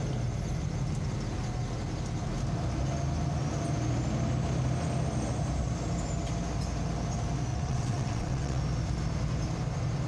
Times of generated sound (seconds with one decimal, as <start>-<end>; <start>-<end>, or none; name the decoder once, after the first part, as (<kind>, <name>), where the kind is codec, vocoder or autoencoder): 7.5-8.6 (vocoder, WaveNeXt)